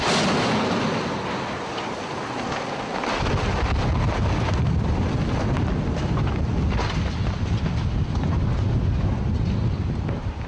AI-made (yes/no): no